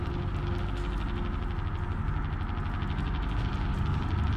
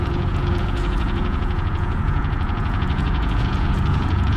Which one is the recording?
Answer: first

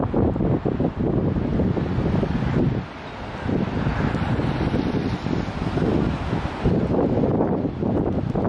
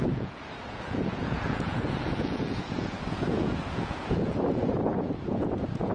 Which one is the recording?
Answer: first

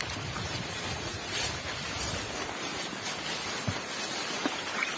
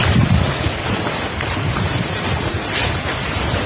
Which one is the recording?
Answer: second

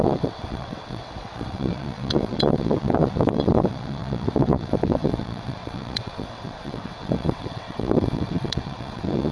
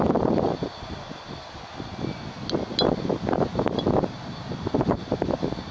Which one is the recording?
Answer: second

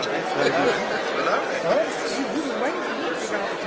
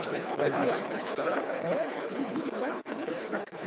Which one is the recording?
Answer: first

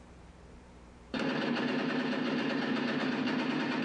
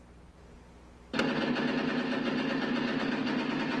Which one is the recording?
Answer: second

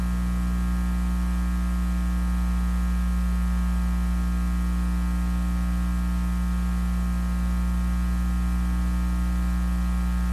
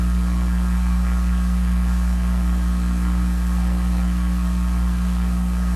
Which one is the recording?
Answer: first